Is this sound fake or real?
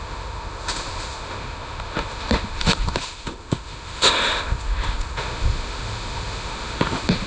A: fake